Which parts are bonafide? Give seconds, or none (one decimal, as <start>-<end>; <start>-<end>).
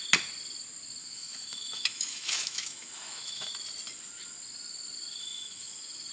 0.0-1.0; 3.5-5.2